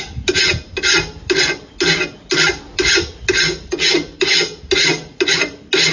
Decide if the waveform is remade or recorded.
recorded